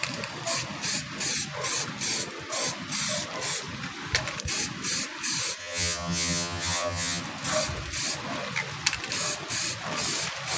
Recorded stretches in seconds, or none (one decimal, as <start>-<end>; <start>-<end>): 0.0-5.6; 7.2-10.6